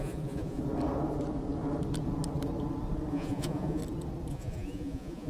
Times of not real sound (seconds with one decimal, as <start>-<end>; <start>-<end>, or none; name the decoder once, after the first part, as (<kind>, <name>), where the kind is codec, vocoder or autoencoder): 0.0-0.6 (vocoder, Vocos); 3.1-3.8; 4.3-5.3